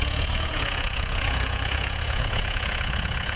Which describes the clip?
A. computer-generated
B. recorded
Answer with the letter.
A